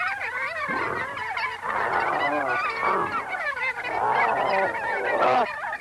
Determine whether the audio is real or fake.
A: real